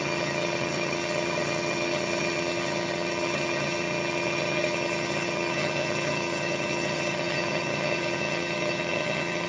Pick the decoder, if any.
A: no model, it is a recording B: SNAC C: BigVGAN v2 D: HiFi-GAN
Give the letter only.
D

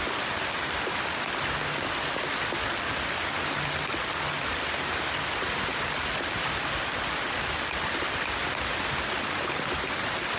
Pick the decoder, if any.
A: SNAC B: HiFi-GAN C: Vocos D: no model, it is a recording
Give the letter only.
D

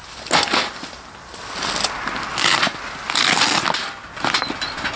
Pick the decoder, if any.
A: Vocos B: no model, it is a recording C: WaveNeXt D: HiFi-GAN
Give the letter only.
B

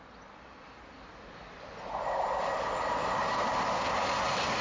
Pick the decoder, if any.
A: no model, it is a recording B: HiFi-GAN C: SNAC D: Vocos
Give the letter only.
A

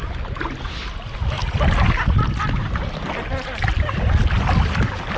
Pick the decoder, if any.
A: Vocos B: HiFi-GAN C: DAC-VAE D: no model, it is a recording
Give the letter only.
D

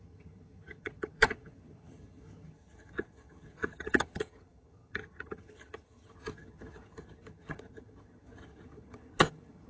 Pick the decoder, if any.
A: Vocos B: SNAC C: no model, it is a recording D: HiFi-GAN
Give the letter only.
D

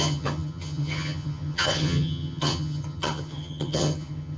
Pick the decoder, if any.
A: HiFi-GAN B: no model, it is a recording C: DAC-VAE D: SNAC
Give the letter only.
A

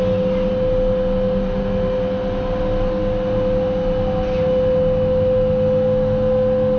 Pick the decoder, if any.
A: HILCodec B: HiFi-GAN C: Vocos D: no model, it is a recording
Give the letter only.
D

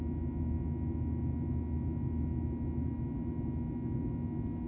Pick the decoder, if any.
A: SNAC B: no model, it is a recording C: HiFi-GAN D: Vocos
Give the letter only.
B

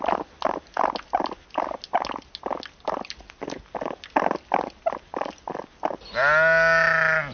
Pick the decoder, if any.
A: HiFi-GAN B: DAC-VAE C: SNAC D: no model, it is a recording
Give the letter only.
D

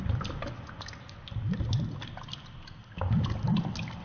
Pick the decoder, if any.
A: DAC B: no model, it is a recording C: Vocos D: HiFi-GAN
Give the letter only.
B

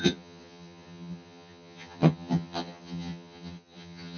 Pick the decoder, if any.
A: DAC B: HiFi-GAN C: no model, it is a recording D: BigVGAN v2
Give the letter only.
B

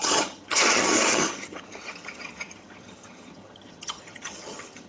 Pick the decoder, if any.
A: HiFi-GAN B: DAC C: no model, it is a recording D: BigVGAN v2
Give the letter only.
A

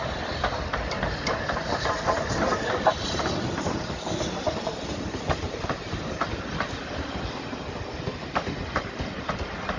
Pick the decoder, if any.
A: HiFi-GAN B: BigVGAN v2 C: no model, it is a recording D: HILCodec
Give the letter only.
C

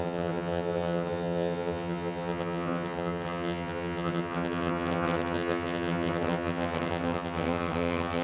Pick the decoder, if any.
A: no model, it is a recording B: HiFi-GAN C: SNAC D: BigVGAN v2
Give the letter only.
B